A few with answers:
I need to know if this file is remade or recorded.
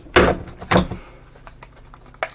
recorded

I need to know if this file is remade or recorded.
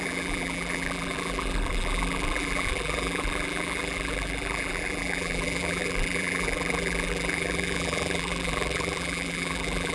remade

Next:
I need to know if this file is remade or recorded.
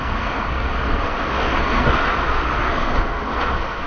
remade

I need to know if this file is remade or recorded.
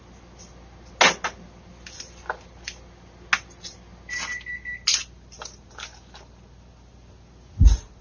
recorded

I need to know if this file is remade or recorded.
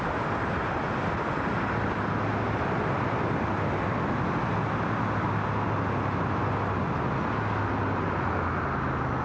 recorded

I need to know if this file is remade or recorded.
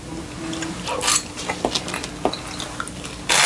recorded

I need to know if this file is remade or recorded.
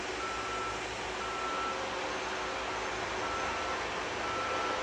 recorded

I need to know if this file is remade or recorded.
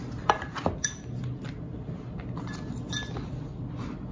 recorded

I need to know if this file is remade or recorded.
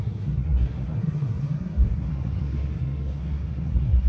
remade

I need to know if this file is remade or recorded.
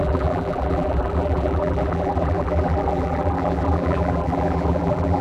remade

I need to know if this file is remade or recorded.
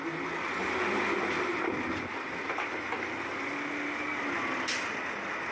recorded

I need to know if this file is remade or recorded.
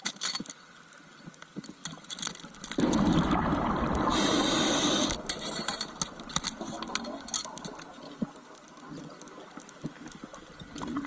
recorded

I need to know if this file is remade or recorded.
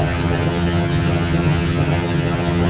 remade